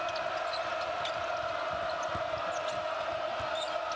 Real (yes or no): yes